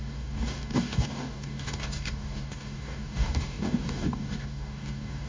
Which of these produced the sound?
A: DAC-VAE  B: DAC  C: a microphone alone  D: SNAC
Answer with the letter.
B